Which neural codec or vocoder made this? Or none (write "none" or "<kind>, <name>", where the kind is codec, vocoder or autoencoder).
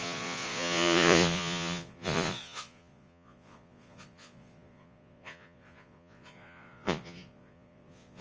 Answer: vocoder, Vocos